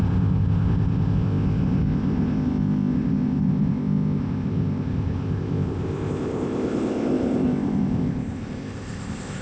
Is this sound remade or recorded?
remade